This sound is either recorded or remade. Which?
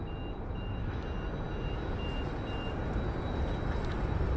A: recorded